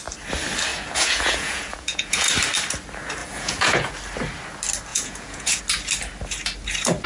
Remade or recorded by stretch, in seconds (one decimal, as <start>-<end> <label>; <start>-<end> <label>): 0.0-0.7 recorded; 0.7-2.3 remade; 2.3-3.2 recorded; 3.2-3.9 remade; 3.9-4.9 recorded; 4.9-5.6 remade; 5.6-7.1 recorded